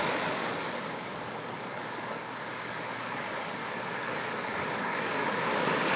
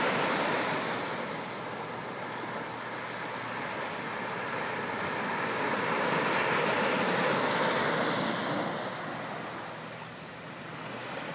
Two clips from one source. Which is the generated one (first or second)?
first